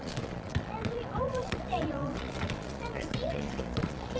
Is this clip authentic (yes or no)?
no